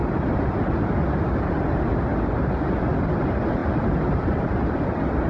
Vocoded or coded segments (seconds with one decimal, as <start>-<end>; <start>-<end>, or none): 3.6-5.3